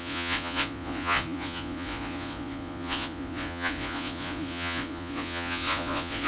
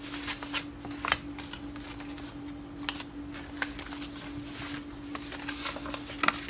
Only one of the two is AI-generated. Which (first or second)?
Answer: first